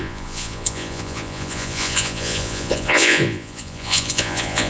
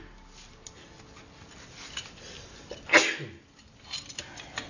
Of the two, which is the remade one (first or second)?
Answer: first